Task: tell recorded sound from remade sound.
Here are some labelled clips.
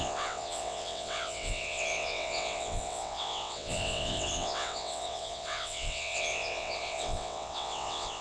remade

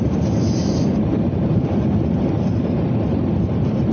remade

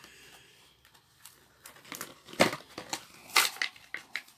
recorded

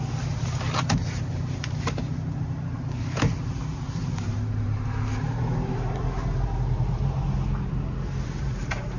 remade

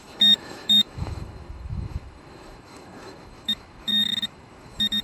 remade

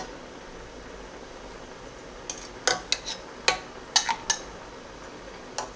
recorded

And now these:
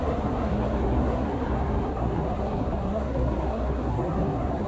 remade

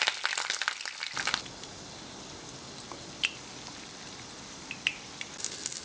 recorded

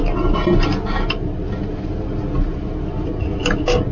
recorded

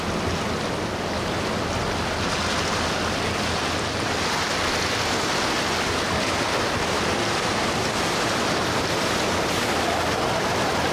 recorded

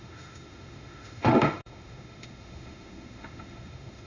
remade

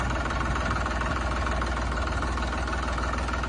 recorded